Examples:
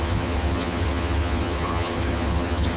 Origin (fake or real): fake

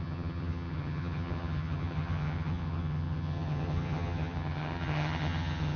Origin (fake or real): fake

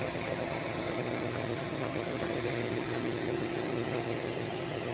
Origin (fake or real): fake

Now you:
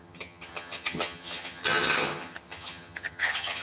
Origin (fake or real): fake